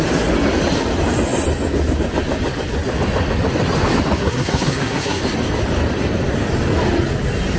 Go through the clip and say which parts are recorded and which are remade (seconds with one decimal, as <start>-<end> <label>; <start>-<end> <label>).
0.0-4.2 recorded; 4.2-5.2 remade; 5.2-7.6 recorded

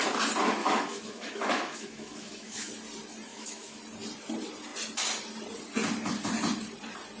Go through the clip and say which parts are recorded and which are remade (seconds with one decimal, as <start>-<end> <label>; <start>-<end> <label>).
0.0-0.6 recorded; 0.6-2.7 remade; 2.7-3.3 recorded; 3.3-3.8 remade; 3.8-7.2 recorded

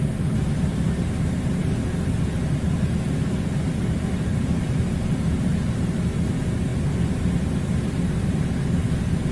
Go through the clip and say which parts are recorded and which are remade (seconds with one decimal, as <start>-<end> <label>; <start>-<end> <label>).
0.0-0.7 recorded; 0.7-2.2 remade; 2.2-4.3 recorded; 4.3-4.9 remade; 4.9-9.3 recorded

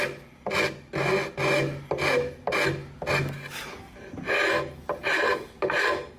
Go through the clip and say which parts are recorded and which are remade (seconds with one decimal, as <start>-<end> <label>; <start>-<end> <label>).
0.0-5.0 recorded; 5.0-5.6 remade; 5.6-6.2 recorded

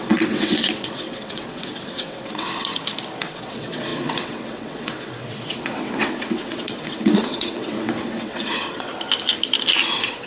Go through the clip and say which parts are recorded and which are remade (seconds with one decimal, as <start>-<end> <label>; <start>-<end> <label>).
0.0-2.7 remade; 2.7-3.2 recorded; 3.2-8.9 remade; 8.9-9.9 recorded; 9.9-10.3 remade